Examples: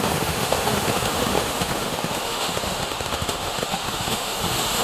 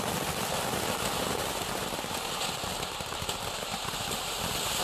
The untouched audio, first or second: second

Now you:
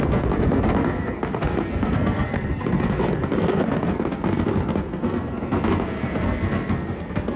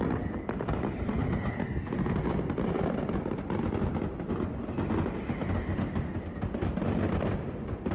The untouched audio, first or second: second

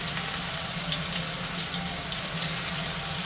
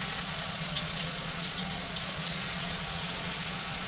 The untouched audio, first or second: first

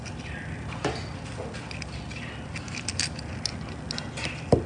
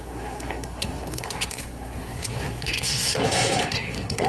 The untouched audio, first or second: first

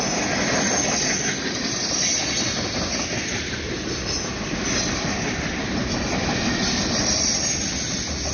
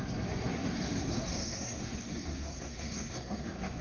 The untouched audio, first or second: first